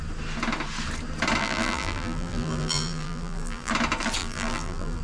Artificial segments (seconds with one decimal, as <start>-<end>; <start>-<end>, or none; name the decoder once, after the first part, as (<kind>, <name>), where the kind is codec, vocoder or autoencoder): 1.4-3.7 (vocoder, BigVGAN v2); 4.2-5.0